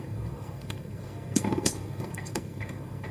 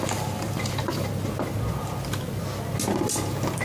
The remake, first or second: first